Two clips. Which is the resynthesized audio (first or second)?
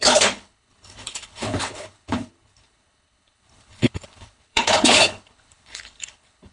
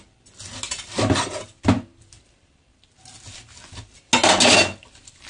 first